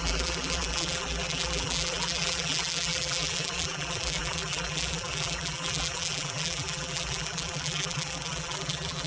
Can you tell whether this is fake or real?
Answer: fake